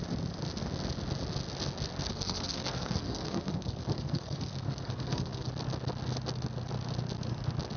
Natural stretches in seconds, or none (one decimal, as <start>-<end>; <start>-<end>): 0.0-2.1; 5.5-7.8